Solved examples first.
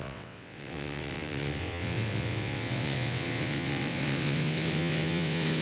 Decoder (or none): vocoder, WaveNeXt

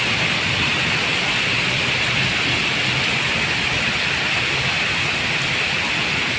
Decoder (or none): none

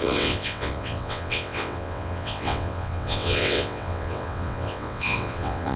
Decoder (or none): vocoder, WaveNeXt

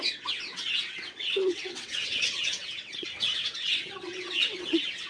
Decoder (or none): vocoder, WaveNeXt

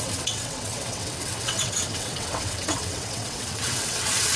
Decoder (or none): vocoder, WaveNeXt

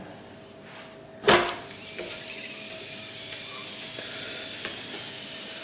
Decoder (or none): none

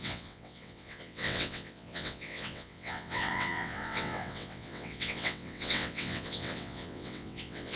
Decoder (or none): vocoder, WaveNeXt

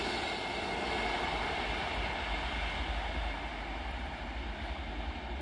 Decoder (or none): none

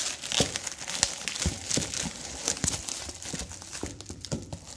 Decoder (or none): none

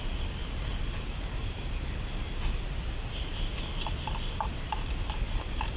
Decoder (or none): none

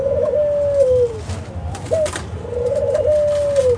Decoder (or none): none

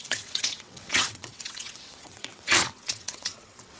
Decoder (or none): vocoder, WaveNeXt